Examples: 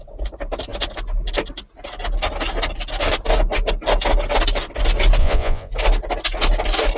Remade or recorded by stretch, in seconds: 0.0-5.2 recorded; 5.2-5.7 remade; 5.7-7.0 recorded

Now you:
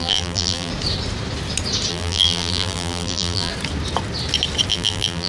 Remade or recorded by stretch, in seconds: 0.0-0.7 remade; 0.7-1.9 recorded; 1.9-3.5 remade; 3.5-4.7 recorded; 4.7-5.3 remade

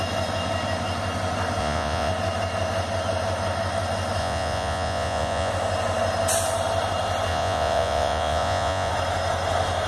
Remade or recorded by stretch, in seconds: 0.0-1.6 recorded; 1.6-2.1 remade; 2.1-4.2 recorded; 4.2-5.5 remade; 5.5-7.3 recorded; 7.3-8.9 remade; 8.9-9.9 recorded

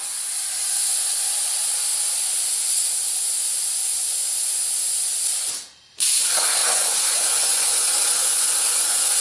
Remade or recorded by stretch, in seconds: 0.0-6.6 recorded; 6.6-9.2 remade

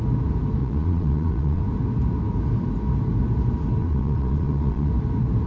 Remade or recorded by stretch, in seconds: 0.0-0.6 recorded; 0.6-1.6 remade; 1.6-3.8 recorded; 3.8-4.9 remade; 4.9-5.5 recorded